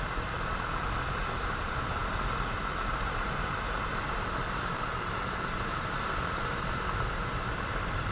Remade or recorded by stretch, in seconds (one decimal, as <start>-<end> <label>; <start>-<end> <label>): 0.0-8.1 remade